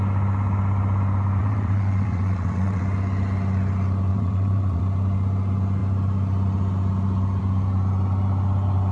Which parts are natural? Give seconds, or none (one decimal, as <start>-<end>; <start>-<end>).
0.0-1.4; 2.8-4.1; 4.8-8.9